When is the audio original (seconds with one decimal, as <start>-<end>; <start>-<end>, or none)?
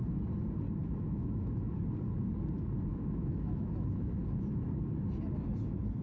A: 0.0-0.8; 1.8-2.9; 4.2-6.0